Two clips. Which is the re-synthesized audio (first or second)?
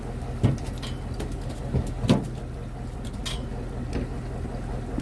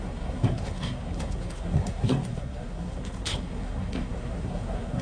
second